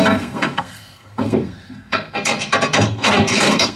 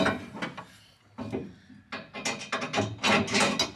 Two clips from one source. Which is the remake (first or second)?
first